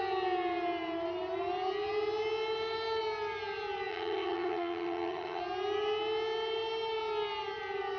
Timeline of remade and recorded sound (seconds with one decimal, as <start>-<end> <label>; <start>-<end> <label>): 0.0-3.9 recorded; 3.9-5.4 remade; 5.4-8.0 recorded